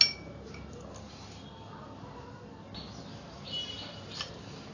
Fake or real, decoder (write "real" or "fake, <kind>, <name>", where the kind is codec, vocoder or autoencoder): real